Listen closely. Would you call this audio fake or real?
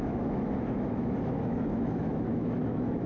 fake